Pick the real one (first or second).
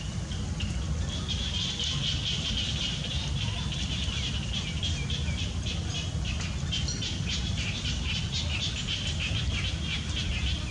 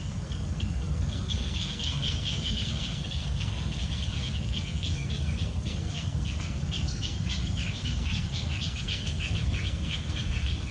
first